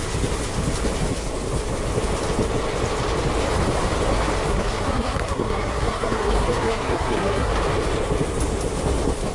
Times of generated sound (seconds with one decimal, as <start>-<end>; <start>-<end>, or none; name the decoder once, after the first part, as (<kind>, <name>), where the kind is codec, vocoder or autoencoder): 4.5-7.5 (codec, SNAC)